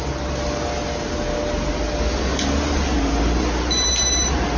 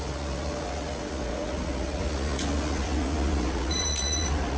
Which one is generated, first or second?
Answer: second